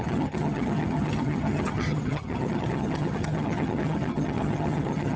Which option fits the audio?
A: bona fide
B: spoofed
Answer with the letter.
B